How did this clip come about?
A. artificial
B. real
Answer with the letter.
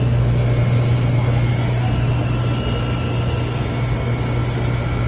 B